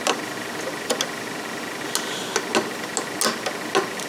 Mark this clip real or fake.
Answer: real